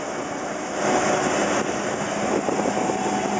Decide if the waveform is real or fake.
real